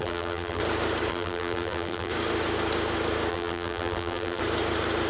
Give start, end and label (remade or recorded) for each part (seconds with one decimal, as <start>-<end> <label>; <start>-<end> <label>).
0.0-0.6 remade; 0.6-1.1 recorded; 1.1-2.1 remade; 2.1-3.3 recorded; 3.3-4.4 remade; 4.4-5.1 recorded